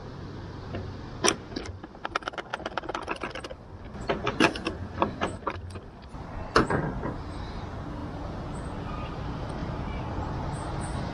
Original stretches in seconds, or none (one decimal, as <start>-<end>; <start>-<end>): 0.0-11.1